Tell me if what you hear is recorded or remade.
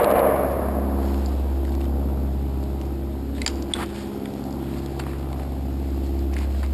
recorded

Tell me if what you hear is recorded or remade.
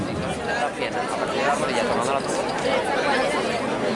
recorded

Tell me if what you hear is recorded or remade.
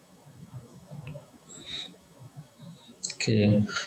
remade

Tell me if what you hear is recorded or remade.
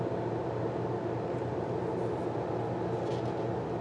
recorded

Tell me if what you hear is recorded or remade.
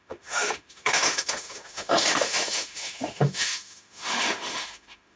remade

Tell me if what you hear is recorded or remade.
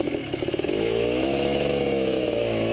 remade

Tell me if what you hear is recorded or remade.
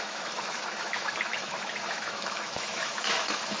remade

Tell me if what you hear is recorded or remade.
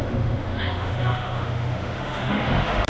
remade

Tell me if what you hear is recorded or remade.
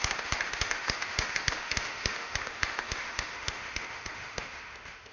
remade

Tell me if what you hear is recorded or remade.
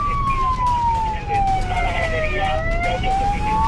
recorded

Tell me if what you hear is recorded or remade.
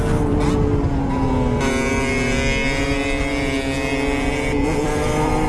recorded